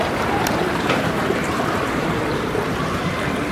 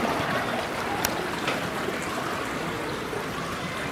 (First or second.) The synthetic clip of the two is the first